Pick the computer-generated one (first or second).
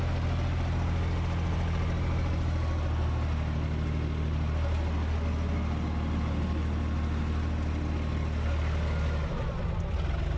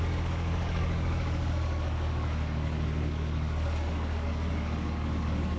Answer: second